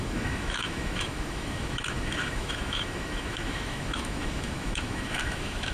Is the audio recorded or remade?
remade